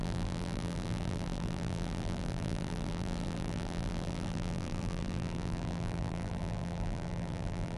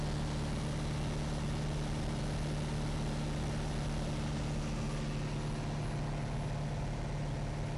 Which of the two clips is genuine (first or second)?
second